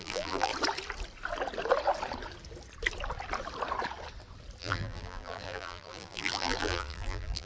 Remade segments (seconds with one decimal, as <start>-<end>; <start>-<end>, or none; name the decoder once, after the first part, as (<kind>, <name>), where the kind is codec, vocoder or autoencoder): 0.0-0.5 (vocoder, BigVGAN v2); 4.6-7.5